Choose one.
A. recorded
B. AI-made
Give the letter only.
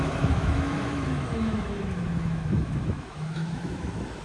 B